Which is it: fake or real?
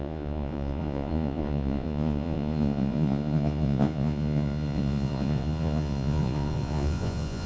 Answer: fake